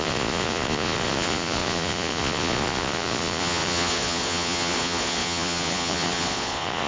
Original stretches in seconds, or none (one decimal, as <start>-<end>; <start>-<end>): none